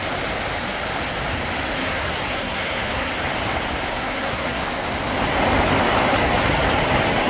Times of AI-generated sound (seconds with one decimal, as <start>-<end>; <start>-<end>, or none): 1.8-3.1; 3.9-4.6